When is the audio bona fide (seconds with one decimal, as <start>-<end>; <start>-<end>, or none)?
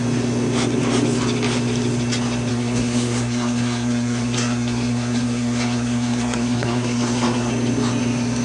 0.0-2.5; 7.5-8.4